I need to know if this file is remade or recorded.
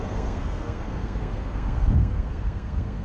remade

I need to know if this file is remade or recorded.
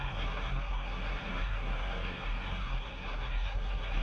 remade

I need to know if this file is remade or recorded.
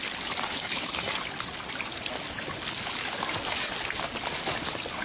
recorded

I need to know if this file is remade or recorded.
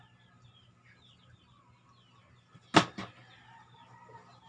recorded